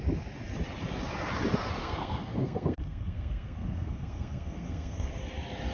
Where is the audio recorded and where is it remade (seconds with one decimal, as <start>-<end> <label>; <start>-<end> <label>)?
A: 0.0-1.8 recorded; 1.8-5.2 remade; 5.2-5.7 recorded